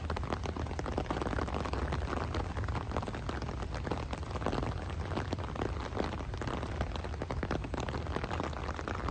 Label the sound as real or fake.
real